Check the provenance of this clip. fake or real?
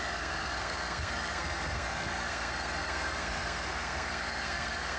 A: fake